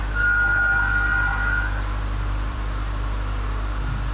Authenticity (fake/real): fake